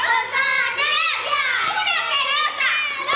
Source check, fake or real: real